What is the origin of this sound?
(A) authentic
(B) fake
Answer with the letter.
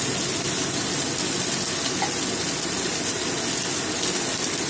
A